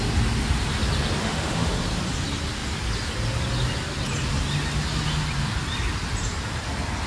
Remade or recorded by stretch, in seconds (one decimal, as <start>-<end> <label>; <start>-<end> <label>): 0.0-1.2 recorded; 1.2-1.8 remade; 1.8-7.1 recorded